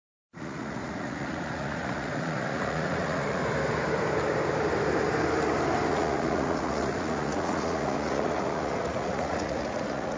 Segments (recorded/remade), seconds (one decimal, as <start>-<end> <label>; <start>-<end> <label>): 0.0-3.4 remade; 3.4-5.9 recorded; 5.9-10.2 remade